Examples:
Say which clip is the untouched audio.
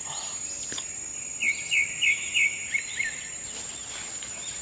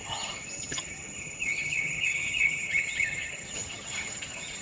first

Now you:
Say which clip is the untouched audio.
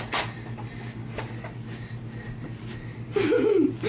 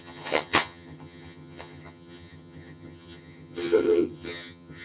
first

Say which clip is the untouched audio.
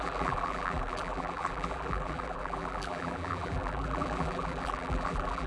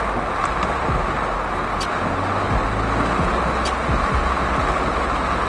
second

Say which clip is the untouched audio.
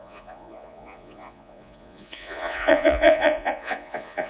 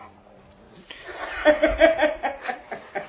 second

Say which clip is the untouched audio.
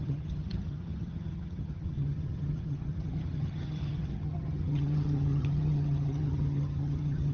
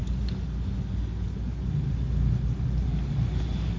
second